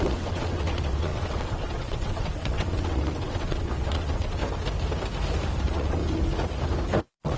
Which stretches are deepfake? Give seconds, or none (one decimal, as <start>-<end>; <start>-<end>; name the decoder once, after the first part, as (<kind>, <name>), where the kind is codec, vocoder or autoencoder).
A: 0.0-4.4 (vocoder, WaveNeXt); 5.6-6.0; 7.0-7.4